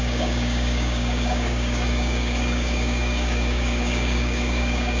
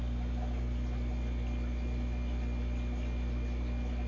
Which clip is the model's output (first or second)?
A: first